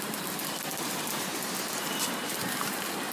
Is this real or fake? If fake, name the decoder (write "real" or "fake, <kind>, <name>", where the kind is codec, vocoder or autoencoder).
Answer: real